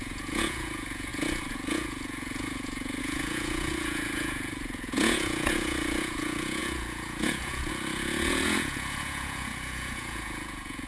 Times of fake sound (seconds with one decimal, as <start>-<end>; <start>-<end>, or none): 0.0-10.9